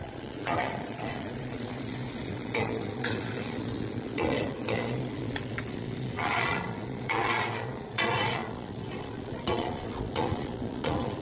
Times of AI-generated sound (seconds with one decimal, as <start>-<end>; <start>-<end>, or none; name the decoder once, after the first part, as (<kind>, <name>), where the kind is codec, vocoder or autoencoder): 0.0-11.2 (vocoder, Vocos)